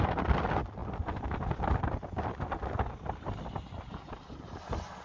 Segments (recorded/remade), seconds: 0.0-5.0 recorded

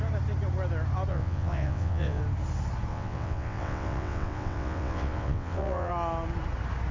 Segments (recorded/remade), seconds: 0.0-1.1 recorded; 1.1-2.2 remade; 2.2-2.9 recorded; 2.9-5.9 remade; 5.9-6.9 recorded

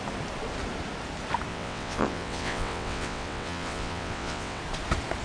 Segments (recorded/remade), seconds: 0.0-1.5 recorded; 1.5-4.6 remade; 4.6-5.2 recorded

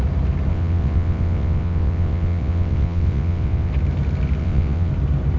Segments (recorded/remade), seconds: 0.0-0.5 recorded; 0.5-3.7 remade; 3.7-4.4 recorded; 4.4-4.9 remade; 4.9-5.4 recorded

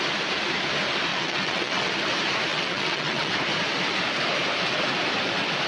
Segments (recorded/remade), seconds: 0.0-1.1 recorded; 1.1-1.9 remade; 1.9-2.5 recorded; 2.5-3.3 remade; 3.3-5.7 recorded